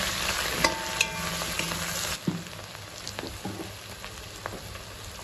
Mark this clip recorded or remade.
recorded